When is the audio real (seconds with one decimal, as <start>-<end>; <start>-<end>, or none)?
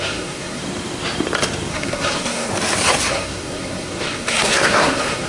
0.6-1.7; 2.5-3.1